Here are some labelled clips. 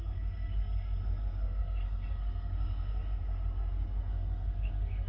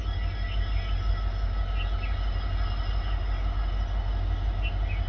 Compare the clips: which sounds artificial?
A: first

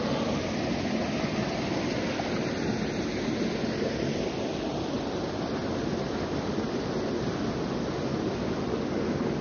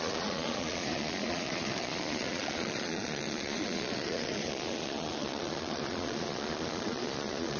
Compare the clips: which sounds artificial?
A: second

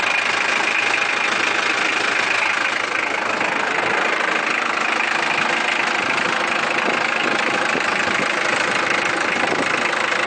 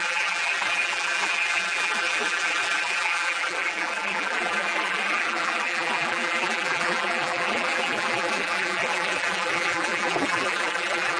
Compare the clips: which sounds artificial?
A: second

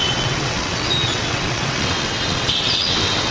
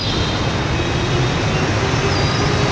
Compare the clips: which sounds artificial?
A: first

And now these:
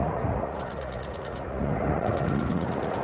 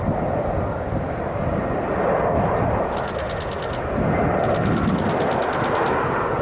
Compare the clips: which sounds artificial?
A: first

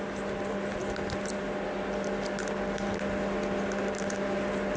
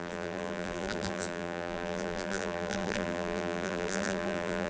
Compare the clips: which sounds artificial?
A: second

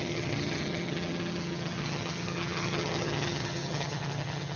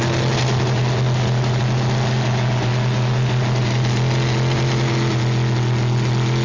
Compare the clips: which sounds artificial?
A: first